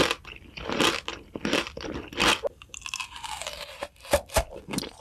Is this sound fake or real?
real